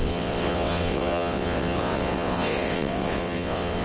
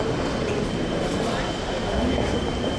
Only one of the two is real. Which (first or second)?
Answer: second